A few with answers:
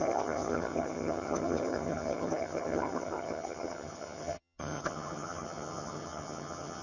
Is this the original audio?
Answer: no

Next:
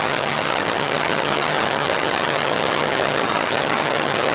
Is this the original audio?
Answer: no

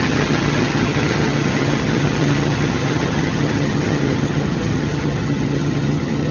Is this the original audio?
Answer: no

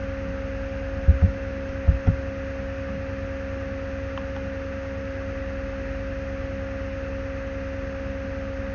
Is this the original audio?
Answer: yes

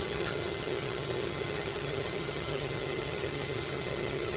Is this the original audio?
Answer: no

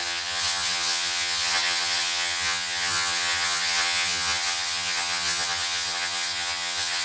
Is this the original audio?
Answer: no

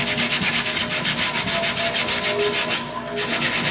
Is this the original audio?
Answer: yes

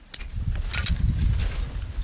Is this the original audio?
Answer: yes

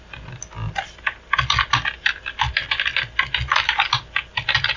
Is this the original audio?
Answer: yes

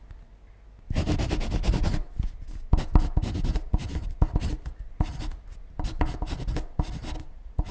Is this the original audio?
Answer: yes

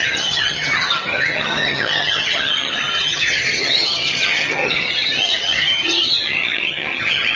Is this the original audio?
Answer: no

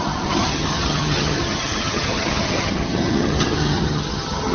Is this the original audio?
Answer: no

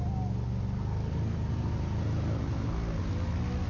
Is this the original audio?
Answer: yes